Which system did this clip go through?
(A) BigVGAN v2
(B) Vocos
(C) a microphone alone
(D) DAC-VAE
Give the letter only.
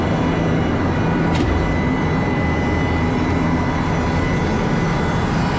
C